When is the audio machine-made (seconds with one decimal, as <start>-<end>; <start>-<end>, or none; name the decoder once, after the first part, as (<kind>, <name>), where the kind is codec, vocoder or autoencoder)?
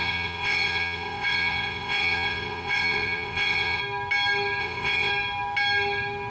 0.0-3.8 (vocoder, WaveNeXt); 4.6-5.1